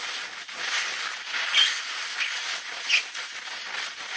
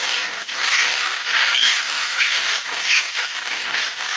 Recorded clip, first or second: first